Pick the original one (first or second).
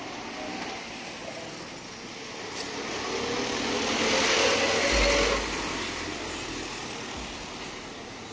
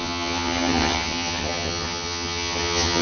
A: first